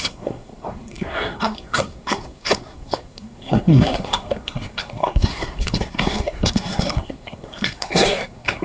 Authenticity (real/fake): fake